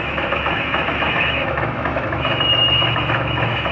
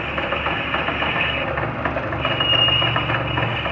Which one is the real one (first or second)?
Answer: second